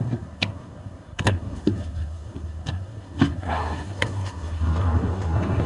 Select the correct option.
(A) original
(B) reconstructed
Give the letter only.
B